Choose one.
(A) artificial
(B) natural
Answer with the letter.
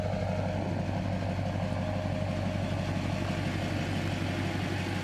B